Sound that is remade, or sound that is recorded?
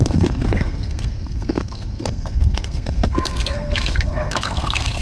remade